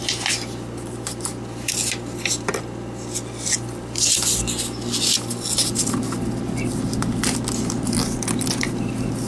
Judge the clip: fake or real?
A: real